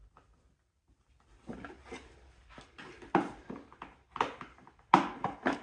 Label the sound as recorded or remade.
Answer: recorded